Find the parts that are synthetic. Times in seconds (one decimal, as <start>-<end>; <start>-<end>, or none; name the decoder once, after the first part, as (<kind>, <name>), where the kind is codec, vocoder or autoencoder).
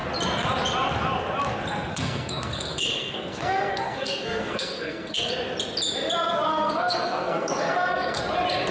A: 1.9-5.3 (codec, SNAC); 6.5-8.2